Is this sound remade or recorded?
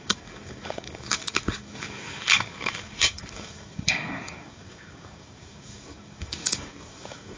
remade